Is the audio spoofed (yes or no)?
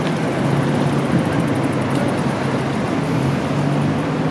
no